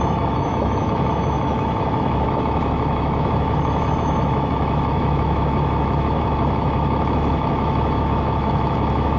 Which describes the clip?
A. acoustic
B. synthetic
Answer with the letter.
B